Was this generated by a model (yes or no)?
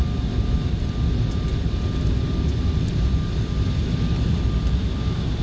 no